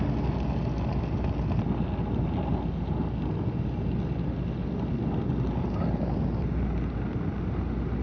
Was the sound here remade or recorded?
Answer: recorded